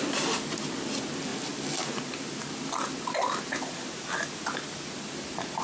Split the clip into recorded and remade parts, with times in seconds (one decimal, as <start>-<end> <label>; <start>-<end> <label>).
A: 0.0-5.6 recorded